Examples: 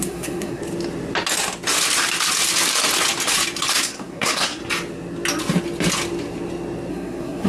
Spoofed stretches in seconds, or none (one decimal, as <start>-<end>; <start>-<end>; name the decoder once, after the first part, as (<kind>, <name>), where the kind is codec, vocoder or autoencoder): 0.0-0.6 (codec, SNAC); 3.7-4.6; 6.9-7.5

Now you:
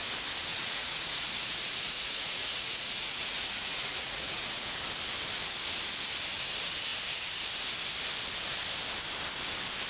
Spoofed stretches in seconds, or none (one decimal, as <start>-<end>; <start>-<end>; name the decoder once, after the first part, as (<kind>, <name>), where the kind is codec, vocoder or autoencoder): 0.5-4.7 (vocoder, Vocos)

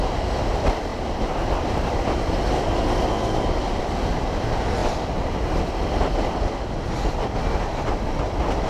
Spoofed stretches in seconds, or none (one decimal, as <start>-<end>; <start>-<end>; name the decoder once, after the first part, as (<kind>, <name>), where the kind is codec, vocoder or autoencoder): none

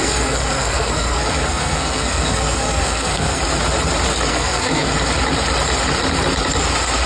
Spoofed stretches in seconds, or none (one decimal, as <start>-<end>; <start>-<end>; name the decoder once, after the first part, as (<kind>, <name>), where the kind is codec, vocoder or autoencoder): 0.0-3.4 (codec, SNAC); 4.3-4.9

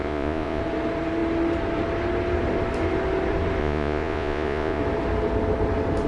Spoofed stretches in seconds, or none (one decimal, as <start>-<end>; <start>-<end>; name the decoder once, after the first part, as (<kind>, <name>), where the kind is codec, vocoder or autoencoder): 0.0-0.6 (vocoder, Vocos); 3.6-4.8

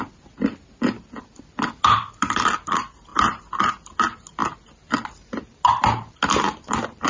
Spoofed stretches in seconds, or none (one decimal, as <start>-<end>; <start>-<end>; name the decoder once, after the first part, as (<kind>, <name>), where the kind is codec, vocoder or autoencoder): none